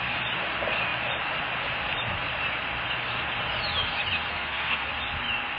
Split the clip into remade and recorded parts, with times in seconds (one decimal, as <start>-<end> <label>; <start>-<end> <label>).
0.0-4.3 recorded; 4.3-4.9 remade; 4.9-5.6 recorded